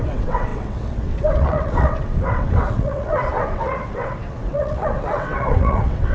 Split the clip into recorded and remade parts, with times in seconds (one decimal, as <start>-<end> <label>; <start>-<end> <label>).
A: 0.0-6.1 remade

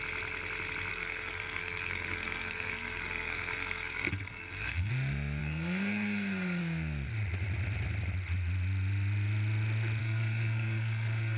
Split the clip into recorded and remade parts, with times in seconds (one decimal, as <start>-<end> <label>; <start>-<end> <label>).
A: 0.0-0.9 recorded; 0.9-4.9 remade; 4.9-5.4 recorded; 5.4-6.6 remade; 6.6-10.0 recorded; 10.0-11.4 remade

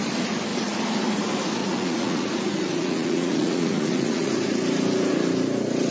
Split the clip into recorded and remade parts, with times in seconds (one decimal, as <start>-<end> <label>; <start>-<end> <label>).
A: 0.0-1.6 recorded; 1.6-4.3 remade; 4.3-5.9 recorded